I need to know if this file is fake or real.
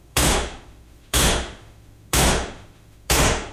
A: fake